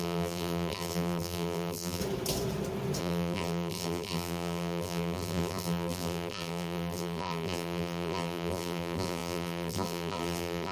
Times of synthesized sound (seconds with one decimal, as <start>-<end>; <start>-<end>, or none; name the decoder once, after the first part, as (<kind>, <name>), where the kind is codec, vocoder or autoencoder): 0.0-2.0 (vocoder, BigVGAN v2); 3.0-10.7